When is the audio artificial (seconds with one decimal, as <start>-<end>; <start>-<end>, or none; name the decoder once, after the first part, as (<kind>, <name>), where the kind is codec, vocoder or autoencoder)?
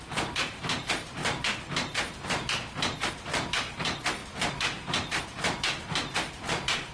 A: 0.0-1.2 (vocoder, BigVGAN v2); 3.1-4.2; 5.2-6.9